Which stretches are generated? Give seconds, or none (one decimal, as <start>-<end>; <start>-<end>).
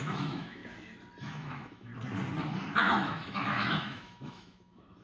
0.0-0.6; 1.2-1.9; 2.8-5.0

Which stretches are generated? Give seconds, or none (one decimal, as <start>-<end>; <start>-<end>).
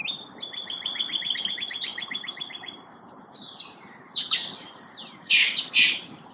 1.5-6.3